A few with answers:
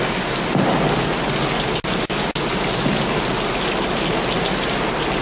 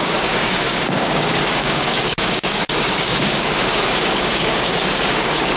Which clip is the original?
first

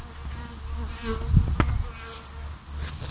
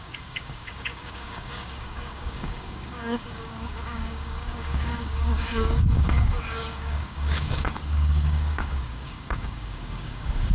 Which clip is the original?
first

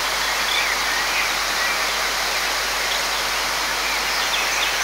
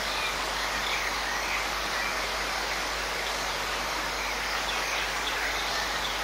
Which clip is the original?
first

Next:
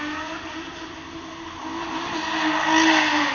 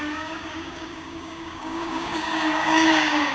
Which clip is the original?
first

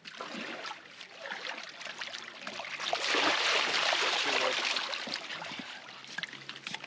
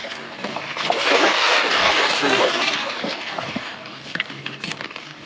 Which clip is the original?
first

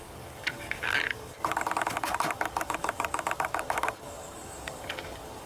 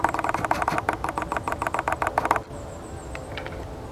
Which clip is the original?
second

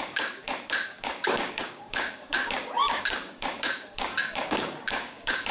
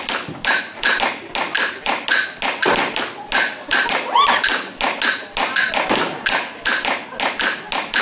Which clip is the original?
second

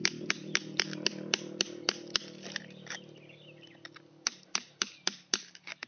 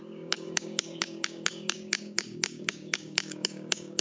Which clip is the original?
first